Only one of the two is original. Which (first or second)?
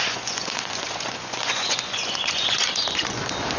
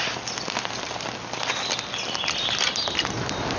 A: second